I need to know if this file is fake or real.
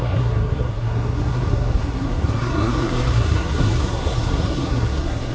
fake